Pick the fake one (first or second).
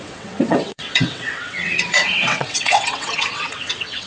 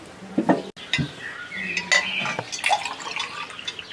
first